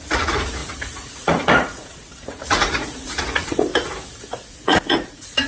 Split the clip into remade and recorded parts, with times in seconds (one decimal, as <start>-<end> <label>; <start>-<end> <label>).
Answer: 0.0-3.7 remade; 3.7-4.5 recorded; 4.5-5.5 remade